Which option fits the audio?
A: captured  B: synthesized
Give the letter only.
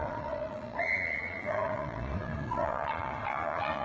B